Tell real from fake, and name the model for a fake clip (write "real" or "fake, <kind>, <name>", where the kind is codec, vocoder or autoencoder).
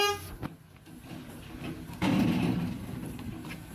real